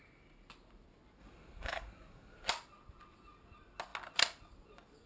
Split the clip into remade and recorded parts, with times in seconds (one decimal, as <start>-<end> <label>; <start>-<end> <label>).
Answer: 0.0-1.2 recorded; 1.2-2.5 remade; 2.5-5.1 recorded